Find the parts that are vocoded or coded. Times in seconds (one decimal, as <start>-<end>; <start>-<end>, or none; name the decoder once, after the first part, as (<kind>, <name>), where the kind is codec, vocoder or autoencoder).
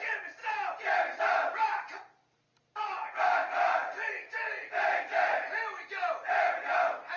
0.0-0.4 (vocoder, BigVGAN v2); 1.2-7.2